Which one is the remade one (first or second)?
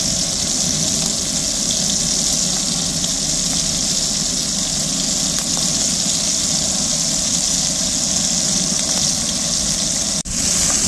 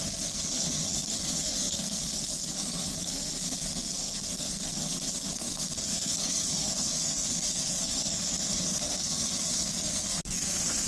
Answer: second